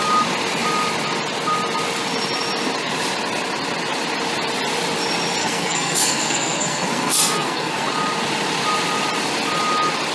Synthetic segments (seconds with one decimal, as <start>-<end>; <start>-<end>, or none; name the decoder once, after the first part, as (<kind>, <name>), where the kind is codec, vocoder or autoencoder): 5.4-7.9 (codec, SNAC)